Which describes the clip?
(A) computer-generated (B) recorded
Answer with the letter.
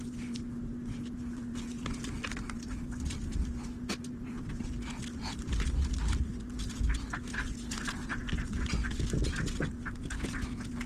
B